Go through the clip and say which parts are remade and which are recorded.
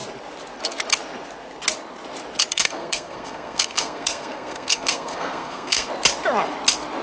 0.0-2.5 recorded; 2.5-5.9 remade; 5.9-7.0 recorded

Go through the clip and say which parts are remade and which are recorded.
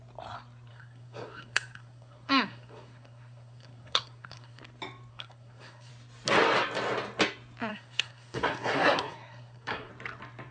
0.0-0.7 recorded; 0.7-4.6 remade; 4.6-5.1 recorded; 5.1-5.9 remade; 5.9-7.7 recorded; 7.7-9.9 remade; 9.9-10.5 recorded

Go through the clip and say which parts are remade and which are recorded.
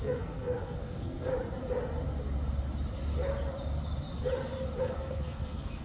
0.0-1.3 remade; 1.3-4.8 recorded; 4.8-5.8 remade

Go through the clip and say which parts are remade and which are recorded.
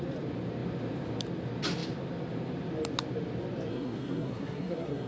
0.0-3.7 recorded; 3.7-5.1 remade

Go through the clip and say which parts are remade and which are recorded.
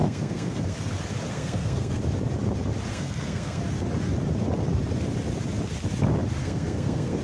0.0-0.9 remade; 0.9-1.3 recorded; 1.3-2.0 remade; 2.0-2.9 recorded; 2.9-3.6 remade; 3.6-6.4 recorded; 6.4-7.2 remade